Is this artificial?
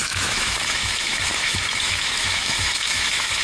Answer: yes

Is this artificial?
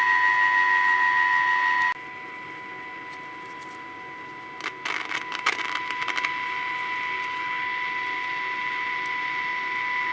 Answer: no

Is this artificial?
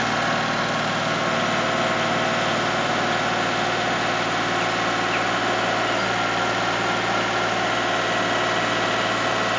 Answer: no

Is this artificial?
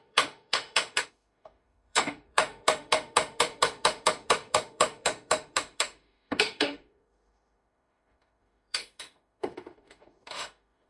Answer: yes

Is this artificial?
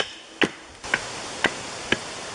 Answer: no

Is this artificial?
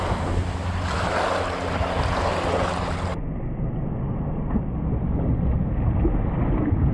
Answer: no